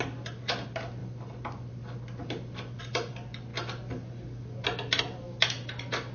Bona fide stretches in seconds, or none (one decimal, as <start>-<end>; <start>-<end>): 0.0-6.1